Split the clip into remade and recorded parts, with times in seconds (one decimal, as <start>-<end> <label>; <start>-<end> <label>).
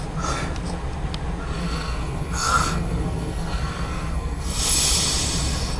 0.0-1.6 recorded; 1.6-4.6 remade; 4.6-5.8 recorded